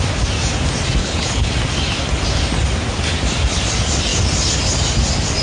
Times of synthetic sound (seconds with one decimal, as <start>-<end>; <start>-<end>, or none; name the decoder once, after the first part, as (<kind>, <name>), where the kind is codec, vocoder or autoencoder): 1.0-1.5 (codec, HILCodec)